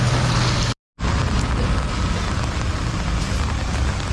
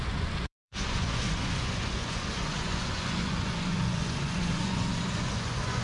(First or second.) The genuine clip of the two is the first